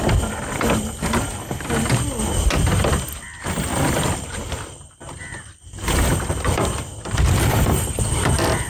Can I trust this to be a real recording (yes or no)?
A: yes